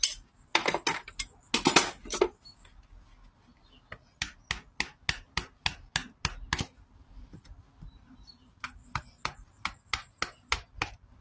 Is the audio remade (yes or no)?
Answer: no